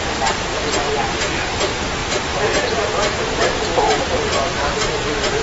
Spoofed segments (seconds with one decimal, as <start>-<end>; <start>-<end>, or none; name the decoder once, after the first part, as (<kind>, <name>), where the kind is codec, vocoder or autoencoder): none